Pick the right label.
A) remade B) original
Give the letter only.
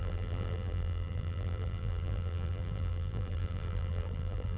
A